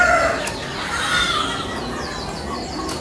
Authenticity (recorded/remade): recorded